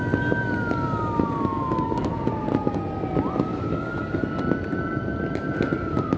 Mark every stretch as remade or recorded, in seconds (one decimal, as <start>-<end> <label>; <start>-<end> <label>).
0.0-1.5 recorded; 1.5-2.1 remade; 2.1-3.5 recorded; 3.5-4.2 remade; 4.2-6.2 recorded